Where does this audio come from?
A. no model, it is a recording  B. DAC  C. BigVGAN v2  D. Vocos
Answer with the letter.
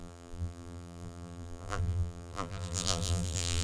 C